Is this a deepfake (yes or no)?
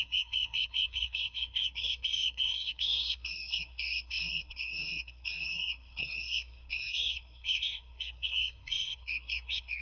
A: yes